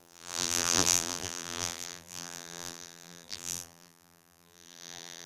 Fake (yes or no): yes